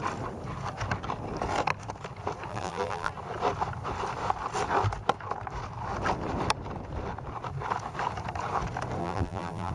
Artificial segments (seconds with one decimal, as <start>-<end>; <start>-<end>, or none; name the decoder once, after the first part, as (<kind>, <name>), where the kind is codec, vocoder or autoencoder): 2.5-3.1 (vocoder, BigVGAN v2); 9.0-9.7